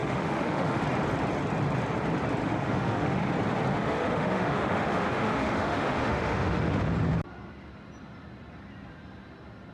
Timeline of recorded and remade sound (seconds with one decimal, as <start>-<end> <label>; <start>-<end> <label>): 0.0-0.8 remade; 0.8-2.4 recorded; 2.4-3.3 remade; 3.3-3.7 recorded; 3.7-6.9 remade; 6.9-9.7 recorded